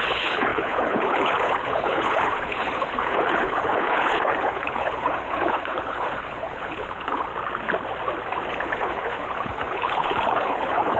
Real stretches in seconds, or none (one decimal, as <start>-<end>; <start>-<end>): 7.3-8.5